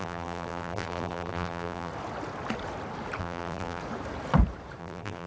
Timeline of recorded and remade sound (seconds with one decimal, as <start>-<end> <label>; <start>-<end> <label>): 0.0-1.9 remade; 1.9-3.2 recorded; 3.2-3.8 remade; 3.8-4.8 recorded; 4.8-5.3 remade